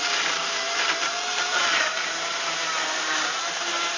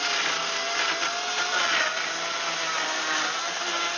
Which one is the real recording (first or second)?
second